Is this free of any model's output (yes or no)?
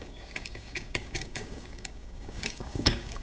no